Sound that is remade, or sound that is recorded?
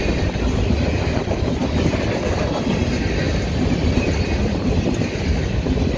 recorded